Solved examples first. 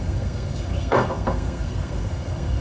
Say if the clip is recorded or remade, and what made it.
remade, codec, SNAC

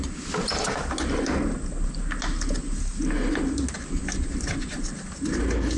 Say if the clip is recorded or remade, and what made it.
recorded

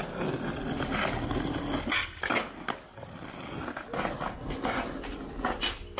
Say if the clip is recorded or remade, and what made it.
recorded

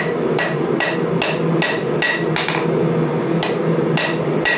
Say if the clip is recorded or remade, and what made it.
recorded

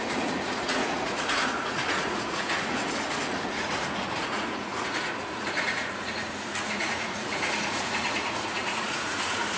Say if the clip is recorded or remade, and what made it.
remade, vocoder, Vocos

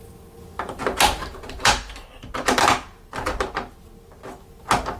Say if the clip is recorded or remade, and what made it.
recorded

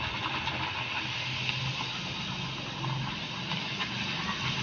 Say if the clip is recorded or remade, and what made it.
recorded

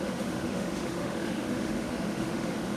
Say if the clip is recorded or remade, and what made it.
remade, autoencoder, DAC-VAE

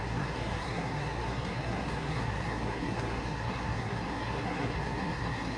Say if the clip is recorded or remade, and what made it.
remade, codec, SNAC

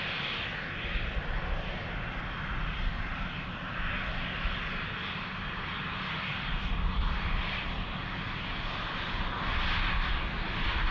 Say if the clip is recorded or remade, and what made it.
recorded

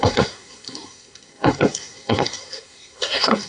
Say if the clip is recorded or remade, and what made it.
remade, codec, SNAC